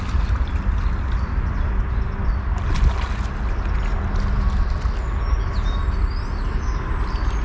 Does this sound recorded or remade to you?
recorded